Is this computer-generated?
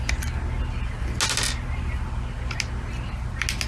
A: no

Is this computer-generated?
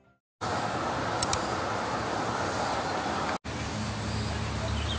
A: no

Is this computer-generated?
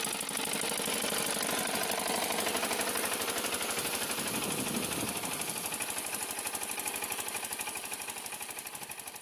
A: no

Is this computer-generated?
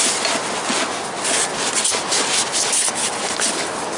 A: no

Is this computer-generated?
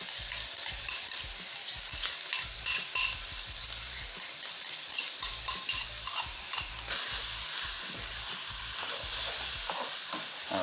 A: no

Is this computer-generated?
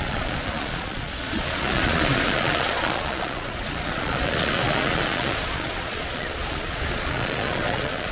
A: yes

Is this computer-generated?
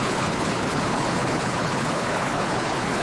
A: yes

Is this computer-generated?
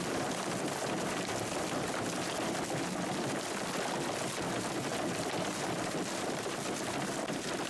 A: no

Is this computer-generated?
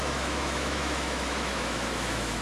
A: yes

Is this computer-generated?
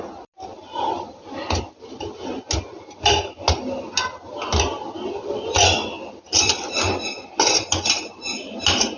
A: no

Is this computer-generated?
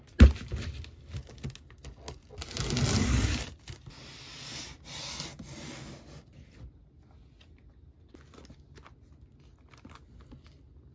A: no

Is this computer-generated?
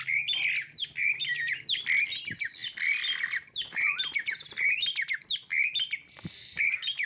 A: no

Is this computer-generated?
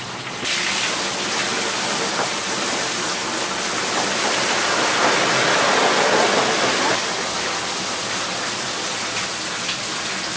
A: no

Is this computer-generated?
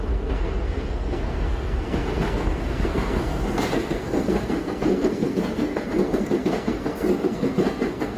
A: yes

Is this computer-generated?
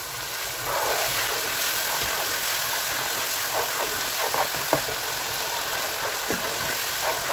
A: no